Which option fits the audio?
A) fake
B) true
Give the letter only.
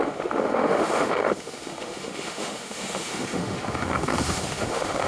A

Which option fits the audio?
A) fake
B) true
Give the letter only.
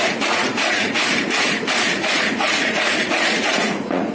A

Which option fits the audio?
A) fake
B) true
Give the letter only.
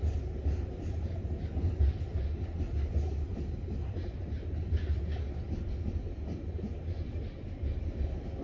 B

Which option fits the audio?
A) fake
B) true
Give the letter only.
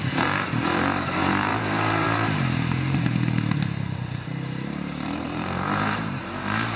A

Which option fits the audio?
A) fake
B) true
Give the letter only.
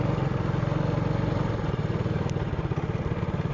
B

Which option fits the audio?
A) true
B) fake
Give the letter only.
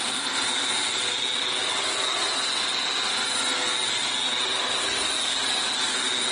A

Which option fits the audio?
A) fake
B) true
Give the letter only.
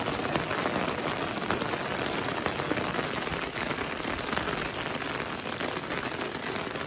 B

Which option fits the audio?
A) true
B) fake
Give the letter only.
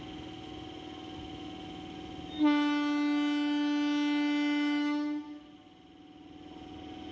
A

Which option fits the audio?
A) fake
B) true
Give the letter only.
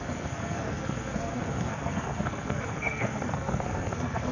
A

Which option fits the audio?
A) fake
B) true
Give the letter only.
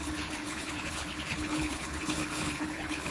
A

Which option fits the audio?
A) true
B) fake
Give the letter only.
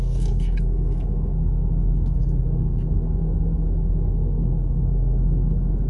B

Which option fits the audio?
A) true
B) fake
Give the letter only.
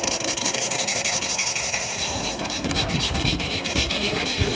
B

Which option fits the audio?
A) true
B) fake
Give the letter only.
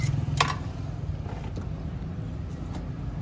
A